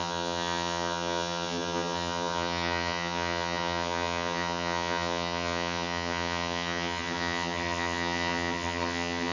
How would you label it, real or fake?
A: fake